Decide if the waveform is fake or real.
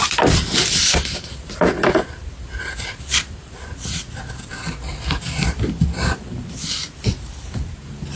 fake